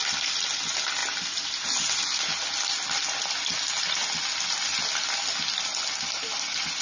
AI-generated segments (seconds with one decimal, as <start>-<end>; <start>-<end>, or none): none